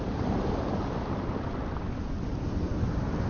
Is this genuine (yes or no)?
yes